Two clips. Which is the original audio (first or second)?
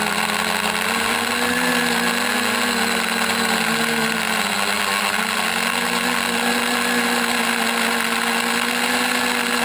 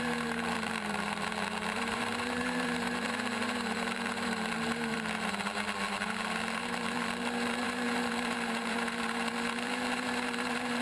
first